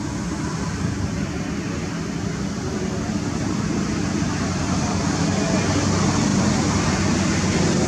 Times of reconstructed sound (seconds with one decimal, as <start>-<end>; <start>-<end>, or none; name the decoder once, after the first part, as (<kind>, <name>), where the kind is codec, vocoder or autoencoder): none